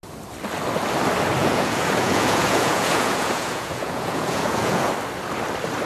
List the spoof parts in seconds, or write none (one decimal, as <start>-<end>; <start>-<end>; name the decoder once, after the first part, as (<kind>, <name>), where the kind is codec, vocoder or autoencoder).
1.4-4.9 (vocoder, Vocos)